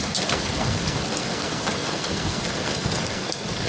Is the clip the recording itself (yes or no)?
no